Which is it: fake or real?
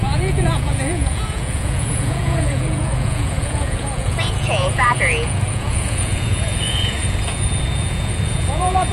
fake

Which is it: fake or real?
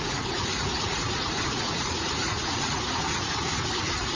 fake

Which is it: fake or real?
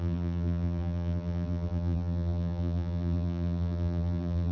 fake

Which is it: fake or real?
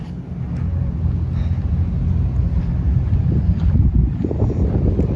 real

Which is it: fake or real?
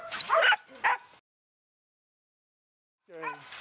real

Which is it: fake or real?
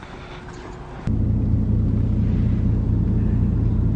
real